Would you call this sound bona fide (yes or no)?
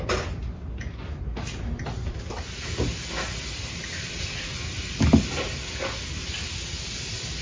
yes